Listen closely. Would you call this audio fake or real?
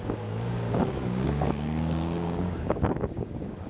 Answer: fake